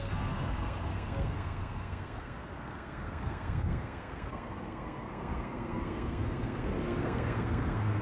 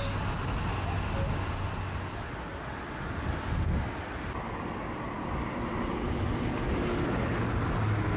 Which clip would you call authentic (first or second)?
second